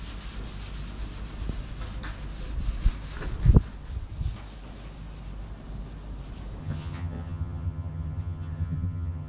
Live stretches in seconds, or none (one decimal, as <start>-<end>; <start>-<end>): 0.0-6.6